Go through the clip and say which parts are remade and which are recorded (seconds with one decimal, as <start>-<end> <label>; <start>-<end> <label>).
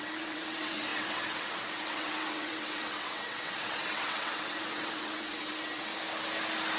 0.0-5.9 remade; 5.9-6.8 recorded